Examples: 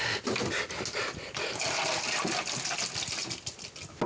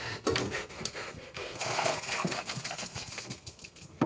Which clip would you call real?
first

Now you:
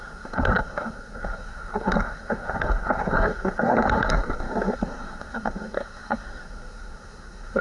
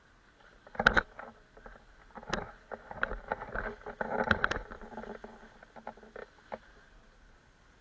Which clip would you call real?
second